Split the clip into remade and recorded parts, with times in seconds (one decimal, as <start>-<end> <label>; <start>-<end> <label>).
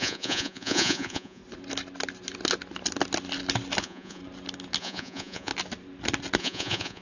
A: 0.0-1.4 remade; 1.4-3.8 recorded; 3.8-4.2 remade; 4.2-4.8 recorded; 4.8-5.5 remade; 5.5-6.4 recorded; 6.4-7.0 remade